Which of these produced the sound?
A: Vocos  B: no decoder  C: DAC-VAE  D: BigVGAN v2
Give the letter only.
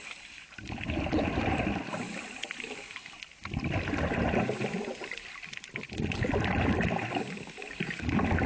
D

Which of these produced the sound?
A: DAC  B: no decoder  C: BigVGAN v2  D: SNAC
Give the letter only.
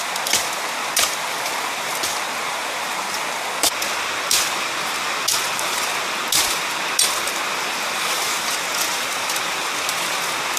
B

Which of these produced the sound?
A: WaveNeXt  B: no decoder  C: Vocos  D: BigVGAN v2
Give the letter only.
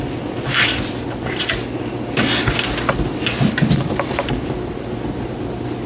B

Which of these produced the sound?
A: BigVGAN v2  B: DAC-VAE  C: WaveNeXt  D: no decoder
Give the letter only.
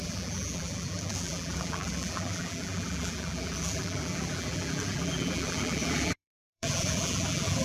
A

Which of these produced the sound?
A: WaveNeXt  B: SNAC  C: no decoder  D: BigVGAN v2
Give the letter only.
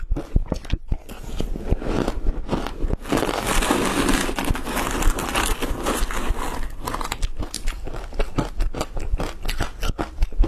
C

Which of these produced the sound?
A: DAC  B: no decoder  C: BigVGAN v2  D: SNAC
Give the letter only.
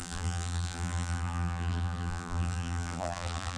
C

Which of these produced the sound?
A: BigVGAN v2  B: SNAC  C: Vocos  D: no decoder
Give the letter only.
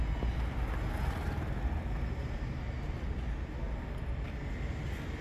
D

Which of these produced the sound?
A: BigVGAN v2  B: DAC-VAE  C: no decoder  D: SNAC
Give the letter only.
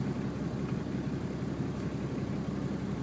C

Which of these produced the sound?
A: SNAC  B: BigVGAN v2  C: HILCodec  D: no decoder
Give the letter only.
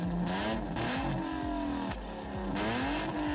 D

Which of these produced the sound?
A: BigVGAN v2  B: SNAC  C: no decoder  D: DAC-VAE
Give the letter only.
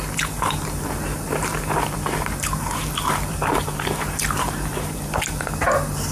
A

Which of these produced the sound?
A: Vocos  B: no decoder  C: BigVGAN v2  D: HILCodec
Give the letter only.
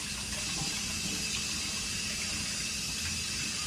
B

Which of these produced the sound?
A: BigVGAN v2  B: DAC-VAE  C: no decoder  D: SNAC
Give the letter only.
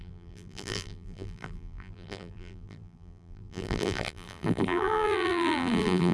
A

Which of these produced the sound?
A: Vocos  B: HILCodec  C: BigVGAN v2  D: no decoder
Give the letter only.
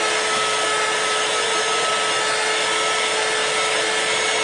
D